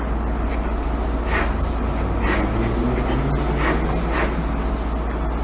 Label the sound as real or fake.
real